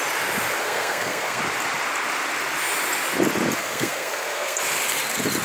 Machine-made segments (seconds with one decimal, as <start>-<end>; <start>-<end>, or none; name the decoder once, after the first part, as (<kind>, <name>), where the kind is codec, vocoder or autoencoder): 0.6-1.4 (codec, SNAC); 3.6-4.6